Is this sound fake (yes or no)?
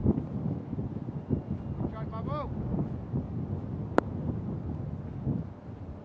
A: no